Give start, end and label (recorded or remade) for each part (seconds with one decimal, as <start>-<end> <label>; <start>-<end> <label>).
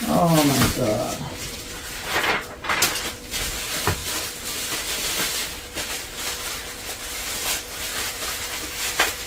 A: 0.0-0.9 recorded; 0.9-1.7 remade; 1.7-7.9 recorded; 7.9-8.5 remade; 8.5-9.3 recorded